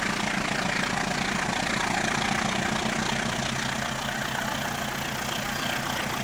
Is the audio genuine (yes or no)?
yes